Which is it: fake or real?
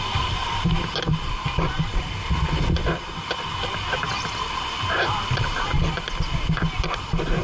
real